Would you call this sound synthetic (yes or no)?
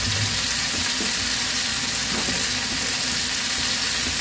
no